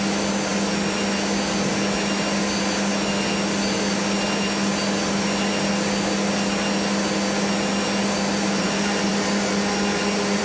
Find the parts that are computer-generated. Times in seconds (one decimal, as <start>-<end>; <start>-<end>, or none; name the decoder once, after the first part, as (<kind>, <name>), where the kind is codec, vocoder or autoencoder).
none